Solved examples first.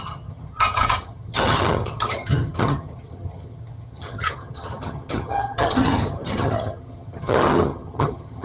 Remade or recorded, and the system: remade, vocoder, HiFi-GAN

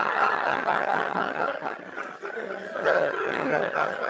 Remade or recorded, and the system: remade, vocoder, HiFi-GAN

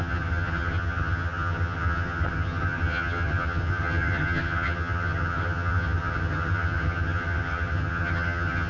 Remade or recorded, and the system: remade, vocoder, HiFi-GAN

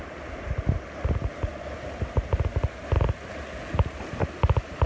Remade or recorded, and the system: recorded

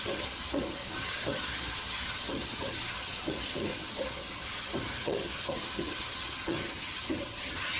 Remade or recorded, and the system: remade, vocoder, HiFi-GAN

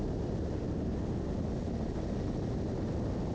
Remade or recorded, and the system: recorded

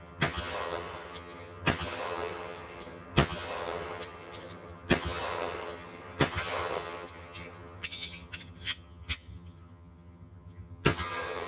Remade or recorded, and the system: remade, vocoder, HiFi-GAN